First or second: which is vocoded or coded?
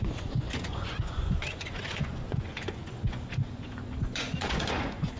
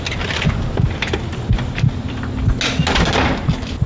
first